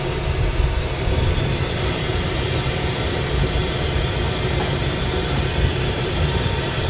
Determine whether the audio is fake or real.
fake